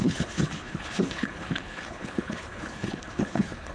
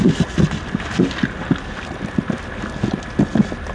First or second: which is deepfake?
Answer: first